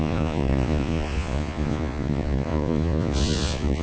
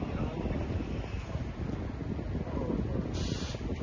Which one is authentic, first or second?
second